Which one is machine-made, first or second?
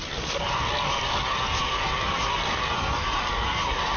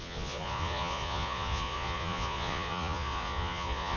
second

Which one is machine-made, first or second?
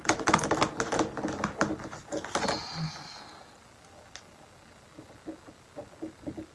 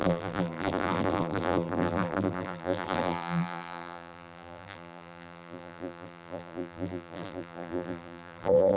second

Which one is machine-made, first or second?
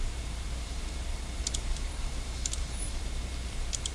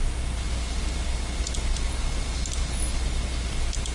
first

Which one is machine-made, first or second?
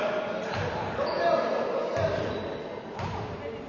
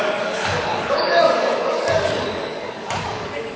second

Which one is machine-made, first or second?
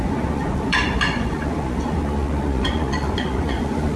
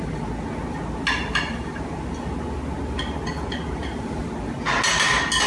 first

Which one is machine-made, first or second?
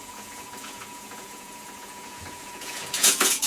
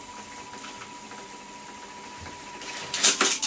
first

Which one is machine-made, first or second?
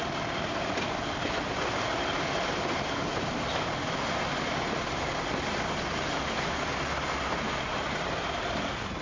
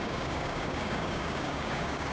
second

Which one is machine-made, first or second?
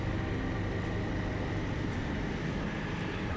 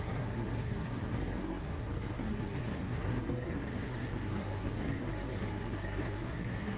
second